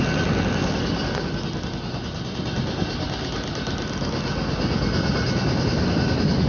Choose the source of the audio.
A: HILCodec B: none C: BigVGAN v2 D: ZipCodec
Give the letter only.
B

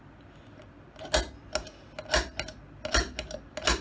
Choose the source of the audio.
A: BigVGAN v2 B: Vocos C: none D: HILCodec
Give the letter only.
C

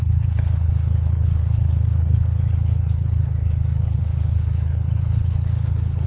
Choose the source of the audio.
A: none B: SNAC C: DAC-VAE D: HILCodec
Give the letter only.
D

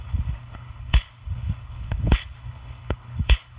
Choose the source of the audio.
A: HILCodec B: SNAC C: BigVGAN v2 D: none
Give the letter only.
A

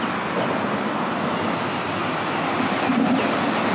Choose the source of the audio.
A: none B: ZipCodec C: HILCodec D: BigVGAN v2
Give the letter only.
A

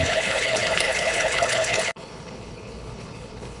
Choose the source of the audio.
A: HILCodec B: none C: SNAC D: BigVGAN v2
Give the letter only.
A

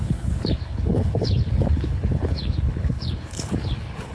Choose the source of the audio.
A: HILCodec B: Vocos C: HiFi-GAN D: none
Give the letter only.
A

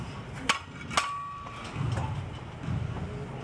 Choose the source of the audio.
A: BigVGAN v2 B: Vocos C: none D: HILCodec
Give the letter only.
C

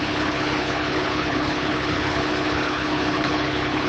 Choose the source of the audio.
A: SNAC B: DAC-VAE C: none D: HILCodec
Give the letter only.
D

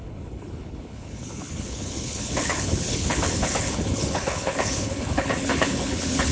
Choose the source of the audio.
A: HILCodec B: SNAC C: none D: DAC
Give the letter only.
A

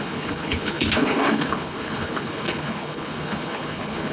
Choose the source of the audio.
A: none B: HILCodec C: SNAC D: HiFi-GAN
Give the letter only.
B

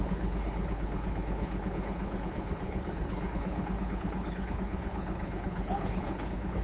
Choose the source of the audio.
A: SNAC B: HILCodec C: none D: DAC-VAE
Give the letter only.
B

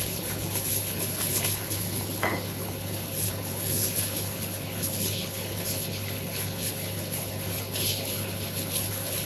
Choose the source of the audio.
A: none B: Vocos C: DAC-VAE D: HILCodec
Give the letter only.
D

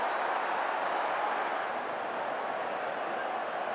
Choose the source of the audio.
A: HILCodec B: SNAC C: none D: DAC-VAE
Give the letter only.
C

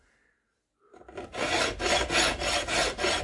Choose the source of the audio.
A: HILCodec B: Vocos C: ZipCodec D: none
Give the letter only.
D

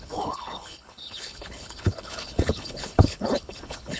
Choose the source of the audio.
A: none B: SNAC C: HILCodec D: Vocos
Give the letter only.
C